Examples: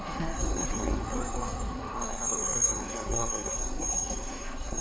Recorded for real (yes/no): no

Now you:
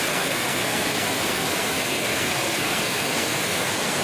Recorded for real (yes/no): no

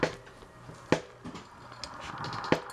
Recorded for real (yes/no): yes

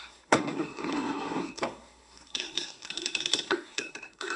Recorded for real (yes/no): no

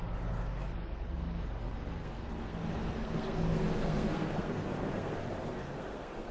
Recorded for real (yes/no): no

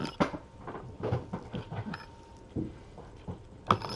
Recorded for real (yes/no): yes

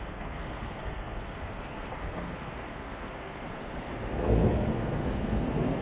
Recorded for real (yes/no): no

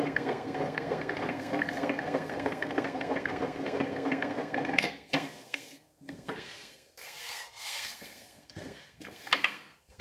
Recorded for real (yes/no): no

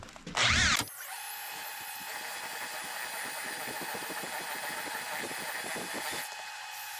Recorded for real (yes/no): yes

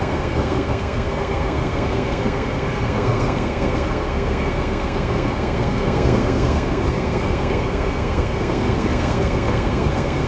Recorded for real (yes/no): no